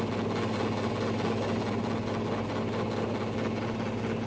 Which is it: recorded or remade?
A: recorded